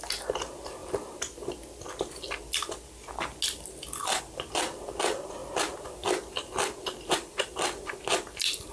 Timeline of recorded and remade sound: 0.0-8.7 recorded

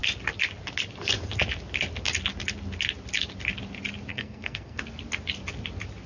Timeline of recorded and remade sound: 0.0-4.1 recorded; 4.1-4.8 remade; 4.8-6.1 recorded

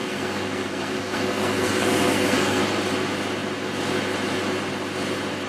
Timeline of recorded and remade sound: 0.0-2.6 remade; 2.6-5.5 recorded

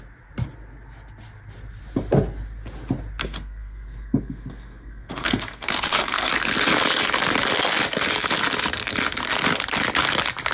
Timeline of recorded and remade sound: 0.0-3.2 recorded; 3.2-6.3 remade; 6.3-10.5 recorded

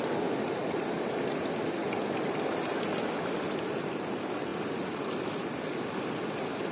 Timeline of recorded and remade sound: 0.0-6.7 recorded